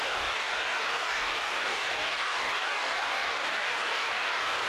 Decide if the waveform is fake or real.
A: fake